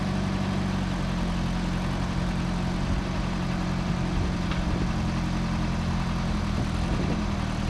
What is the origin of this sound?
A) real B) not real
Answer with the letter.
A